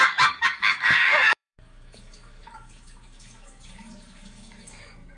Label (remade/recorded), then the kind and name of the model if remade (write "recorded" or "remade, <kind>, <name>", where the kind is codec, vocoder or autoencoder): remade, codec, DAC